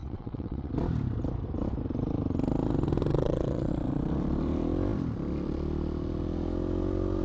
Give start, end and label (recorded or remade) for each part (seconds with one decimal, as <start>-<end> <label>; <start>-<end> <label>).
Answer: 0.0-0.7 remade; 0.7-3.1 recorded; 3.1-3.7 remade; 3.7-7.2 recorded